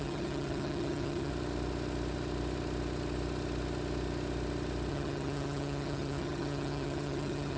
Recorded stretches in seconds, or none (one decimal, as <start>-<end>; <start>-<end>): 1.3-4.9